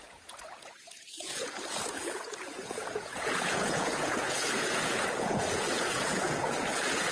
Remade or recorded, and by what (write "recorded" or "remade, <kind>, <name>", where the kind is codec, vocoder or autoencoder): remade, vocoder, Vocos